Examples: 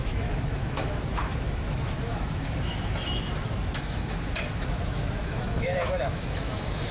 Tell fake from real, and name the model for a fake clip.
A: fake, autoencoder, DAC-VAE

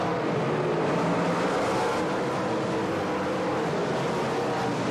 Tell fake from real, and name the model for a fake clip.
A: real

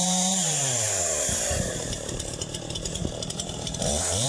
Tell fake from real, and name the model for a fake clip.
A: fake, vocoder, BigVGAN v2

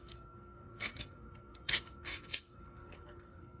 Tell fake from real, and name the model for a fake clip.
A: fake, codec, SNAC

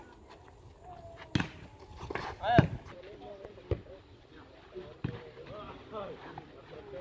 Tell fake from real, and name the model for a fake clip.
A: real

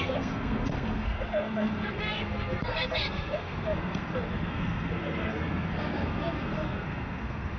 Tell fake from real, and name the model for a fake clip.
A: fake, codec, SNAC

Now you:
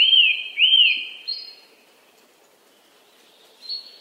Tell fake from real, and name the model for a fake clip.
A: real